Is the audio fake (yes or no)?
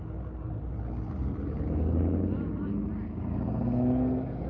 no